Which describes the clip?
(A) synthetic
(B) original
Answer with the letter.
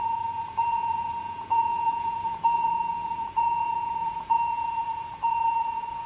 A